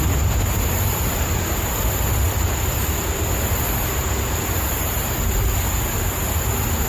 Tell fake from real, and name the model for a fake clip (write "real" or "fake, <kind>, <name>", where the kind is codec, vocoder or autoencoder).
real